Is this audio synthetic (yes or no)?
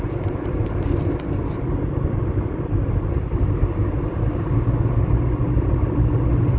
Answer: no